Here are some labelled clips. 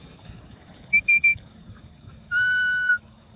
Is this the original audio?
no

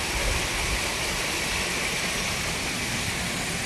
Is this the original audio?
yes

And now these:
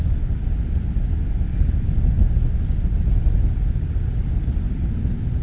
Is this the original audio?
yes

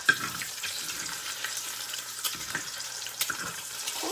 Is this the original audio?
no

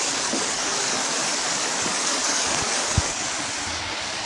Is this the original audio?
no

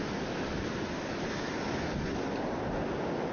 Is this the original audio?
yes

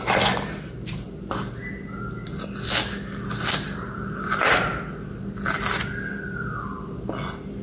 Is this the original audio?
yes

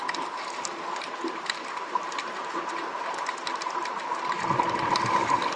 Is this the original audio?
yes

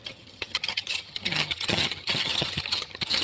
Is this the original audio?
no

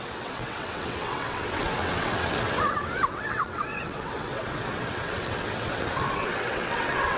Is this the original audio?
no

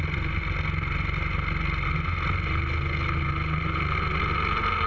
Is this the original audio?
yes